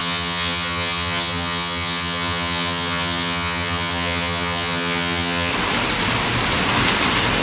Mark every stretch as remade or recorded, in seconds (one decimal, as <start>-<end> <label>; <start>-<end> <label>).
0.0-5.5 remade; 5.5-7.4 recorded